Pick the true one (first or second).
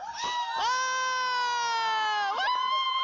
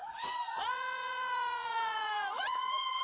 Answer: first